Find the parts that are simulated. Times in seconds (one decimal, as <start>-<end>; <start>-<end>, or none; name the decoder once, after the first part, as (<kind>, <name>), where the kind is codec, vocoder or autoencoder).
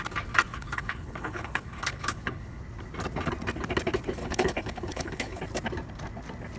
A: 0.5-2.6 (codec, HILCodec); 4.2-5.4